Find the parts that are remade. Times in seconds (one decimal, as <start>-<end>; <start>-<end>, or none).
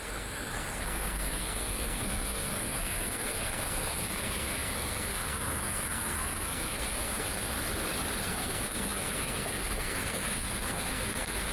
0.0-7.5; 8.2-11.5